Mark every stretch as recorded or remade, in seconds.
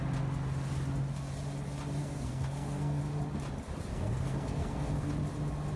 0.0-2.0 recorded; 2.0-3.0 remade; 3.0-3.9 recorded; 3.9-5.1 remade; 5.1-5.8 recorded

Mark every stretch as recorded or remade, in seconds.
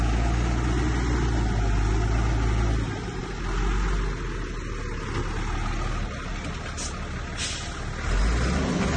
0.0-9.0 recorded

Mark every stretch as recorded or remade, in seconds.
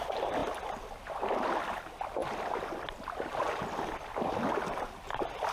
0.0-5.5 recorded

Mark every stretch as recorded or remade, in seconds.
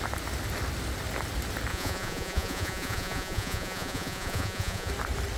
0.0-1.7 recorded; 1.7-4.9 remade; 4.9-5.4 recorded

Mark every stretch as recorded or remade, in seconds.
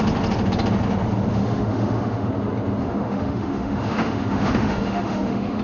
0.0-1.3 recorded; 1.3-2.3 remade; 2.3-2.8 recorded; 2.8-5.6 remade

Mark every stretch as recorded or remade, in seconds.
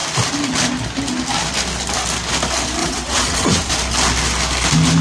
0.0-2.8 recorded; 2.8-3.7 remade; 3.7-5.0 recorded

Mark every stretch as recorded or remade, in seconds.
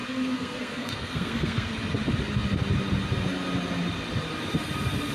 0.0-1.7 remade; 1.7-5.1 recorded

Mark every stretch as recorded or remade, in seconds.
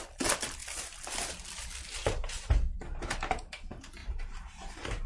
0.0-2.0 recorded; 2.0-2.6 remade; 2.6-4.0 recorded; 4.0-5.1 remade